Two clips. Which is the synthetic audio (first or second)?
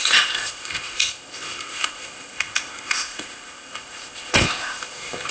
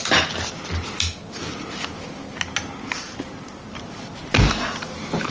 first